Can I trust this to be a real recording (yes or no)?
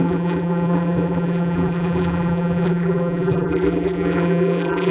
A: no